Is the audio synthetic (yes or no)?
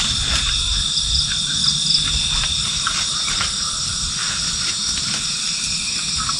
no